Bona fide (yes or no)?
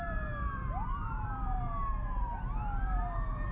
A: no